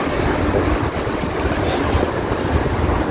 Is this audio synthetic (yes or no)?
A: no